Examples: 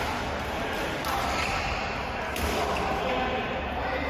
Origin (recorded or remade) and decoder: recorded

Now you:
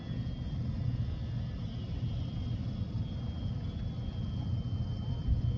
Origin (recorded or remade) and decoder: recorded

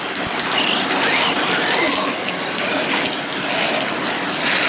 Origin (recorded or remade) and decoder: recorded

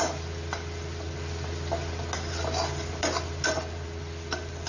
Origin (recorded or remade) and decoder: recorded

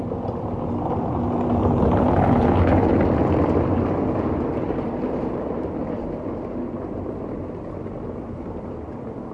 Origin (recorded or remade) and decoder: recorded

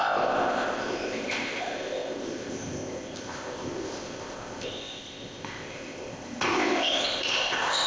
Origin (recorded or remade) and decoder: remade, codec, ZipCodec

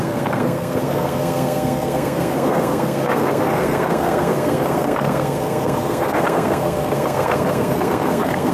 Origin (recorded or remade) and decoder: remade, codec, SNAC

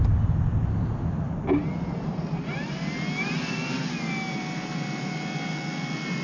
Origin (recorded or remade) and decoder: recorded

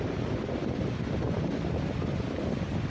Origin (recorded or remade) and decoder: recorded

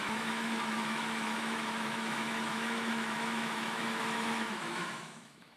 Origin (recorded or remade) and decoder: remade, autoencoder, DAC-VAE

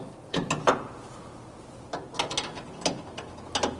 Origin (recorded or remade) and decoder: recorded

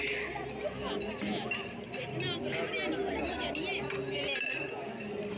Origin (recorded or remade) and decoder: recorded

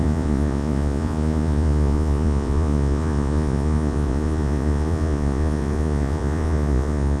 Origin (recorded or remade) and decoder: remade, vocoder, Vocos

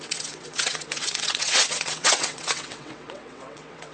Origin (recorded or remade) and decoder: remade, vocoder, WaveNeXt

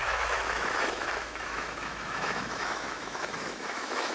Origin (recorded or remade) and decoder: remade, autoencoder, DAC-VAE